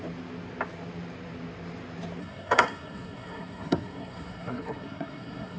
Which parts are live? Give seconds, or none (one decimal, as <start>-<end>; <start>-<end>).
0.0-2.2